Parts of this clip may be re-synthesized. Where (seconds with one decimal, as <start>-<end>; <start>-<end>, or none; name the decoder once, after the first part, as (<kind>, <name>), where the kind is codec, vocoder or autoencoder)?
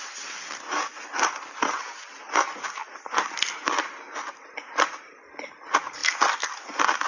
2.8-3.8 (vocoder, BigVGAN v2)